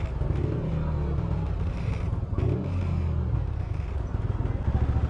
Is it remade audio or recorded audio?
recorded